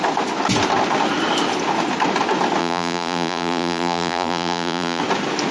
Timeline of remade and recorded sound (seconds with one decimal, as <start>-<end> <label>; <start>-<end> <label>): 0.0-2.6 recorded; 2.6-5.0 remade; 5.0-5.5 recorded